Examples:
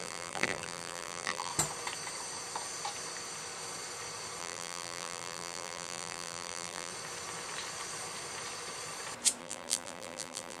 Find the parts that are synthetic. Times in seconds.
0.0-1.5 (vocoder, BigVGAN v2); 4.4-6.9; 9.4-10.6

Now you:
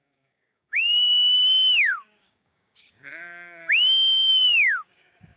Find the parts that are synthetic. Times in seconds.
0.0-5.4 (codec, DAC)

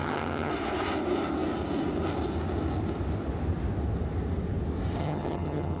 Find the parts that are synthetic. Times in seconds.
0.0-0.5 (vocoder, HiFi-GAN); 5.0-5.8

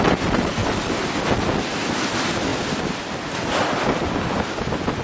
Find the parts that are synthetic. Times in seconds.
0.6-1.2 (vocoder, BigVGAN v2)

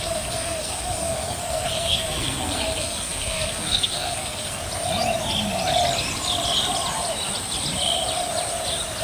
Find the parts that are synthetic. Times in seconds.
0.0-4.6 (codec, SNAC)

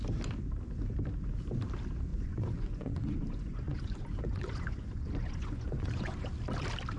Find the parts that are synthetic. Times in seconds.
2.1-6.3 (vocoder, Vocos)